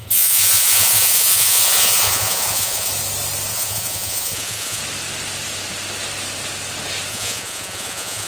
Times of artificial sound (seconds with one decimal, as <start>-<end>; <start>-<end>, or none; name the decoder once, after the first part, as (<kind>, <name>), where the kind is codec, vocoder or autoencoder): 0.0-2.9 (vocoder, Vocos); 3.5-4.8; 7.1-8.3